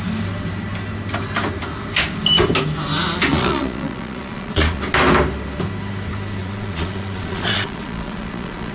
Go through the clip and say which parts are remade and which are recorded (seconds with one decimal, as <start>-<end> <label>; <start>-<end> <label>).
0.0-3.3 recorded; 3.3-4.8 remade; 4.8-6.4 recorded; 6.4-8.7 remade